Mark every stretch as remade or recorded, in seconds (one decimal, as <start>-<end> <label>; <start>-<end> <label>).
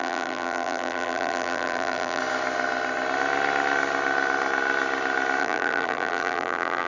0.0-2.2 remade; 2.2-5.4 recorded; 5.4-6.9 remade